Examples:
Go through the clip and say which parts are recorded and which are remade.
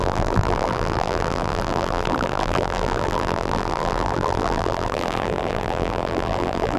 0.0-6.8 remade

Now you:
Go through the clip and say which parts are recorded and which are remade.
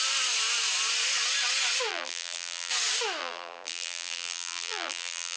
0.0-1.9 recorded; 1.9-2.7 remade; 2.7-3.2 recorded; 3.2-5.4 remade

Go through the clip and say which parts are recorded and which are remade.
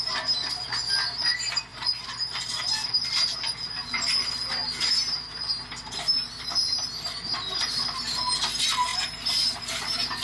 0.0-1.7 recorded; 1.7-3.1 remade; 3.1-8.9 recorded; 8.9-9.6 remade; 9.6-10.2 recorded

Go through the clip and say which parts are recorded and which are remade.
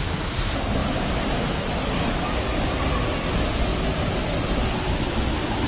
0.0-5.7 recorded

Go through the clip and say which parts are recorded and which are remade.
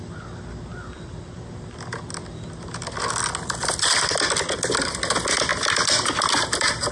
0.0-5.5 recorded; 5.5-6.9 remade